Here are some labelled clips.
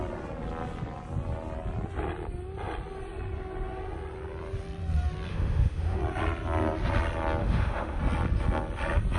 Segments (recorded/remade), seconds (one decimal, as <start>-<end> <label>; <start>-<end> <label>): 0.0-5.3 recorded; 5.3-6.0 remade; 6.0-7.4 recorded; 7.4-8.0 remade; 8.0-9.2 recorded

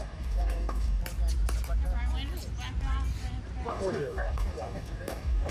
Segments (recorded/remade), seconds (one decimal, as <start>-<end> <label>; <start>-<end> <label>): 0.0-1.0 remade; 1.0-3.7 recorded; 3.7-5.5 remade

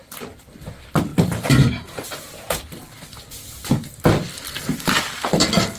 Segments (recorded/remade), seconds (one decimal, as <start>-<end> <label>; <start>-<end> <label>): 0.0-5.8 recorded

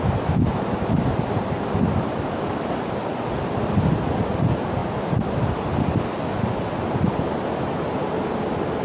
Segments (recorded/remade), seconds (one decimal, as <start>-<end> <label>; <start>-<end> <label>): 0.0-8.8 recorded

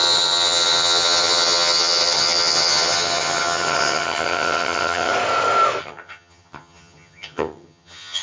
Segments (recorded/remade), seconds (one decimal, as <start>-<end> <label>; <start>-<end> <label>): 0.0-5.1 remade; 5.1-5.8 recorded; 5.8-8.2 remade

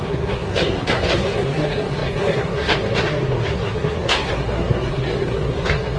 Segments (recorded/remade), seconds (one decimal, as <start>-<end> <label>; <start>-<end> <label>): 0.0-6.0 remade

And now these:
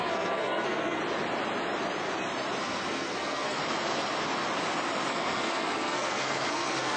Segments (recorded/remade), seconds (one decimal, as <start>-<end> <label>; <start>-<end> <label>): 0.0-1.0 remade; 1.0-2.6 recorded; 2.6-3.6 remade; 3.6-5.1 recorded; 5.1-7.0 remade